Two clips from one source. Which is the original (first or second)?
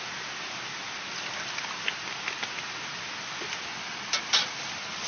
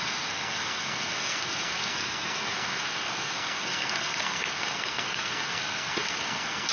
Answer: first